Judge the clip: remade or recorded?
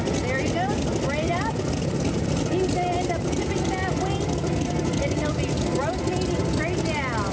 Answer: recorded